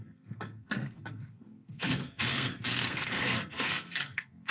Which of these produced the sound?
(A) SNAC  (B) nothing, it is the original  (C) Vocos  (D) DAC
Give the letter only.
A